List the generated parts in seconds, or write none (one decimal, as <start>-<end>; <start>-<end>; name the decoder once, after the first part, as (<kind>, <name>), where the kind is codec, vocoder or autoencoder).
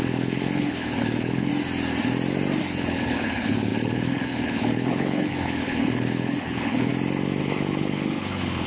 0.0-1.5 (codec, HILCodec); 2.6-6.9; 7.4-8.7